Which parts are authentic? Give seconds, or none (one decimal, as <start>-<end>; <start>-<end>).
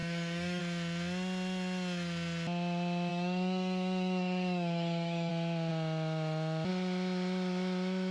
0.6-3.1; 5.3-8.1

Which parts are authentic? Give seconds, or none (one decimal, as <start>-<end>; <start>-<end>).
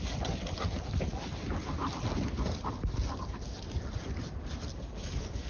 0.0-4.7